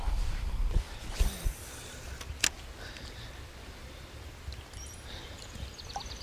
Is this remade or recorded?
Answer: recorded